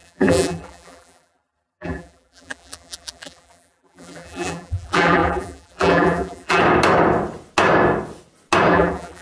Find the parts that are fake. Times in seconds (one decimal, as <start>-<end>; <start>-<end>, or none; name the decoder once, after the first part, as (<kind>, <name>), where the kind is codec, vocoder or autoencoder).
0.0-6.6 (vocoder, BigVGAN v2); 8.7-9.2